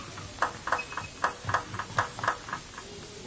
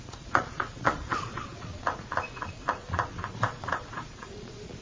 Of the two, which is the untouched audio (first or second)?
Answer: first